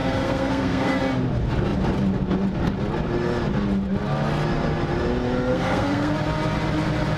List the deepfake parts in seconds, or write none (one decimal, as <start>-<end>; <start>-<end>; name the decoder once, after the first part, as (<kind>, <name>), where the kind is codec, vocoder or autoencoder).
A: 0.0-1.0 (codec, SNAC); 5.5-6.1